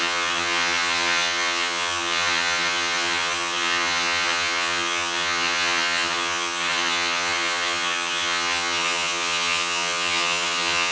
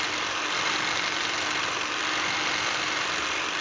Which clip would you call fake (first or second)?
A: first